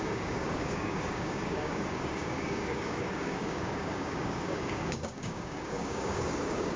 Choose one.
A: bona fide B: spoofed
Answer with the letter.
B